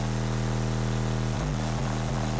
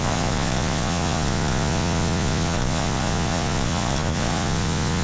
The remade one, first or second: second